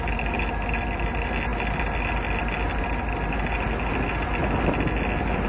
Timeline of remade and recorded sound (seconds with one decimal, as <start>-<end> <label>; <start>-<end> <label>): 0.0-5.5 recorded